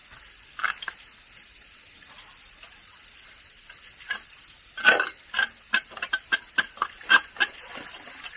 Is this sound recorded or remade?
remade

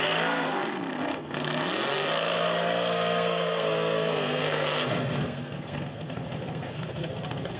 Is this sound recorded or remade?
remade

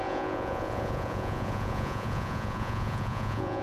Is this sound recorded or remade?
remade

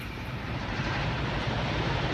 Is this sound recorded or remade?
remade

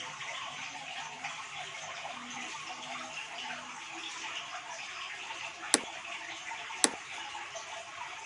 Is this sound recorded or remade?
recorded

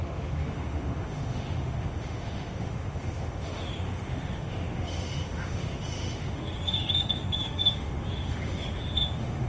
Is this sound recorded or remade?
remade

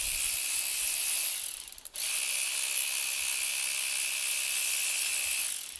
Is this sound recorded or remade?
recorded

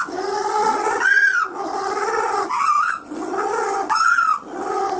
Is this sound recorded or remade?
recorded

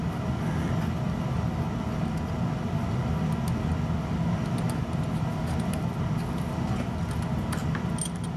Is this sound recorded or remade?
recorded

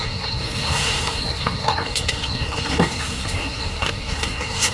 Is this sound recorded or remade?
remade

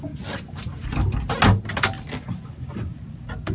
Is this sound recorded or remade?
recorded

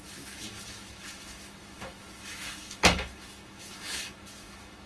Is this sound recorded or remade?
remade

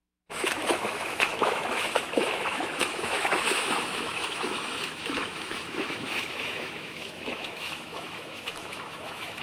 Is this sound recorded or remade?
remade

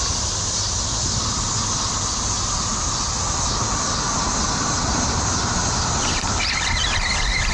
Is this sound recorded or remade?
recorded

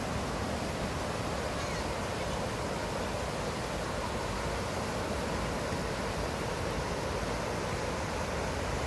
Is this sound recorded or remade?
recorded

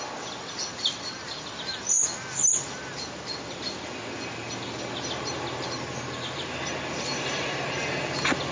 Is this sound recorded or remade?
recorded